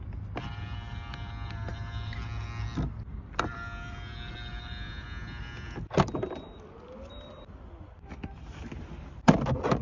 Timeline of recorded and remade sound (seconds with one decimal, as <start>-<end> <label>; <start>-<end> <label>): 0.0-9.8 recorded